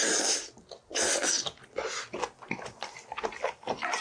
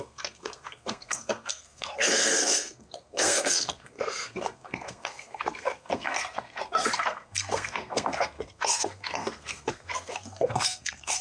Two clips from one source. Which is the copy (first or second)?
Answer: second